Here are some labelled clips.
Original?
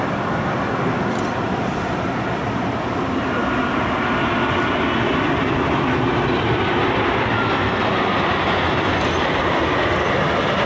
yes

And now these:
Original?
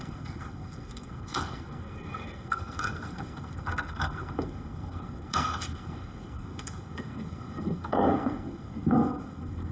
no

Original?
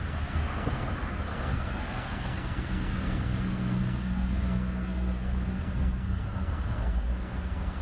no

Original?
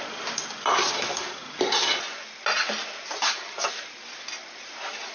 yes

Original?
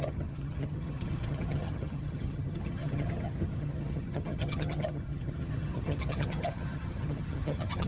no